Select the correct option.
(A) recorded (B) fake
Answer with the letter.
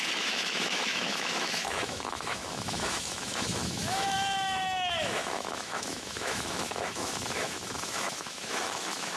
B